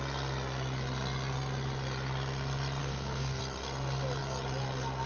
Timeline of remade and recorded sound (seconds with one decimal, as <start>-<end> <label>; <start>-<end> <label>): 0.0-2.8 recorded; 2.8-3.4 remade; 3.4-5.1 recorded

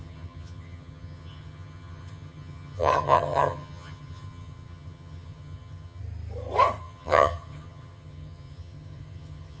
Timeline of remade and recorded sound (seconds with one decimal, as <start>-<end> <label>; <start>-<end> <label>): 0.0-6.0 remade; 6.0-6.8 recorded; 6.8-9.6 remade

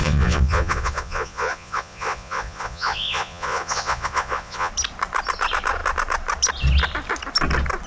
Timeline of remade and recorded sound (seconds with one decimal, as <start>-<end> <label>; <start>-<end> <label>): 0.0-4.7 remade; 4.7-7.9 recorded

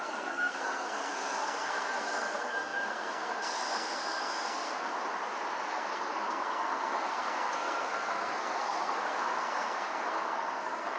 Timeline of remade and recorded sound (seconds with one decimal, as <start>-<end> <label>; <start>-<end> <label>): 0.0-4.9 remade; 4.9-5.7 recorded; 5.7-11.0 remade

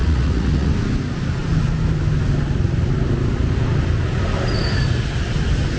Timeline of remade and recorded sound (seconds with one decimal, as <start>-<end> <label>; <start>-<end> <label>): 0.0-0.7 remade; 0.7-5.8 recorded

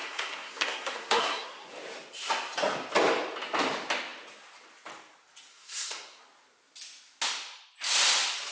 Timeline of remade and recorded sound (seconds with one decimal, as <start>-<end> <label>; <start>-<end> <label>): 0.0-1.7 remade; 1.7-5.5 recorded; 5.5-6.2 remade; 6.2-8.5 recorded